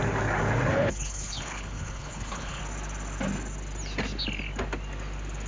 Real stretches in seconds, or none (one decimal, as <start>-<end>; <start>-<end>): 0.0-0.7; 2.6-5.5